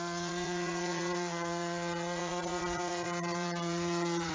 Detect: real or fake fake